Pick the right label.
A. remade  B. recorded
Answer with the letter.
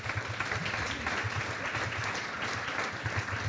B